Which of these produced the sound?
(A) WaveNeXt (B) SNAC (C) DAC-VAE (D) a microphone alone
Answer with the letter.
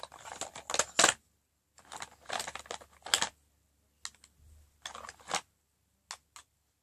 D